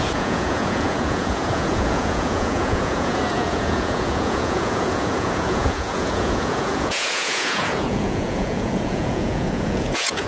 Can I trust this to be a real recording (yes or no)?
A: no